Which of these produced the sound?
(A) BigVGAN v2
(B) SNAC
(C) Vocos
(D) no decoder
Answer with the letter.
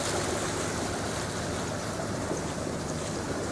D